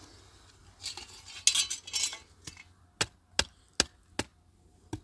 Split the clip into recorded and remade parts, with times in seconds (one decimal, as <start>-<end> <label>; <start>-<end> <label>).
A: 0.0-5.0 recorded